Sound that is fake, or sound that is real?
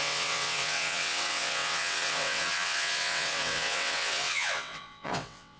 fake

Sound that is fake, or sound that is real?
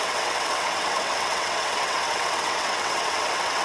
fake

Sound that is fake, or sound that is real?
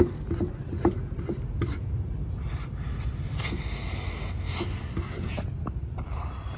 real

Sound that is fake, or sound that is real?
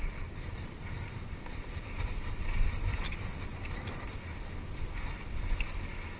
real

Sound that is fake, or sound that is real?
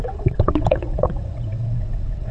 fake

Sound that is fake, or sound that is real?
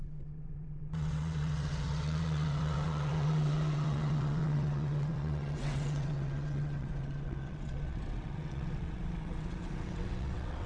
fake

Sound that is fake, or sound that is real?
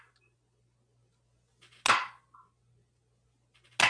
real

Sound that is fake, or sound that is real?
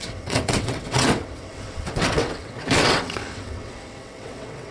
fake